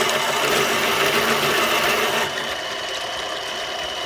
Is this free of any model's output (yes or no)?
yes